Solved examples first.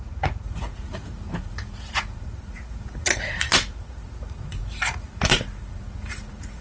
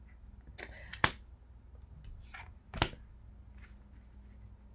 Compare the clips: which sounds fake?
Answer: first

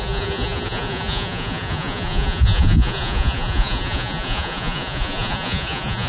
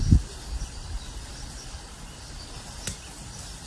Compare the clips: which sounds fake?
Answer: first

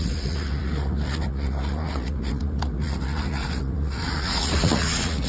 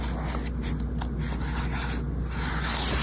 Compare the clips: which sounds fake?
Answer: first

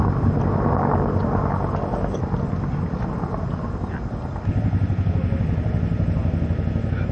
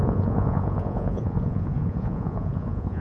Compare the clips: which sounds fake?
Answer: second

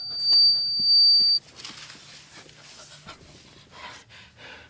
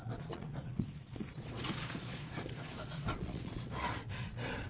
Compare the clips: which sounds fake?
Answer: second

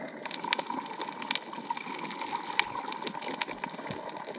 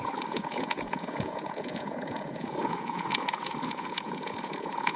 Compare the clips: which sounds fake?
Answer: second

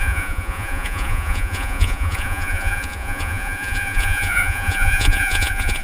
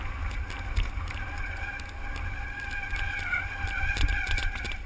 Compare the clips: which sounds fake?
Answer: first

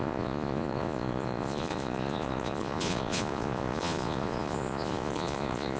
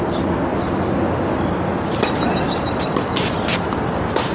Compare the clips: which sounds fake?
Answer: first